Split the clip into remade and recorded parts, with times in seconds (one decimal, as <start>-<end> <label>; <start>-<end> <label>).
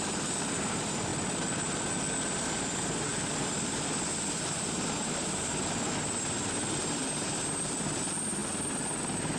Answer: 0.0-9.4 recorded